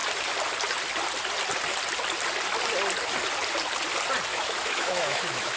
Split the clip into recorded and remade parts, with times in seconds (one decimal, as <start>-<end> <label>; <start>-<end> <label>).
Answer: 0.0-4.3 recorded; 4.3-5.6 remade